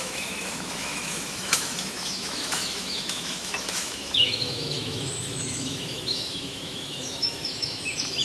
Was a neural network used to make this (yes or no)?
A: yes